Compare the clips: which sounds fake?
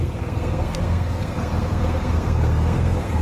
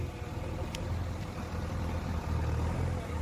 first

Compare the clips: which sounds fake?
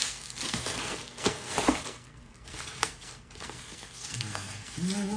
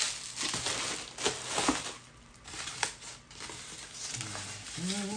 first